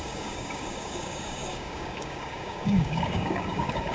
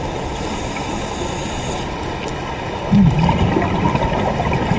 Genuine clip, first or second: second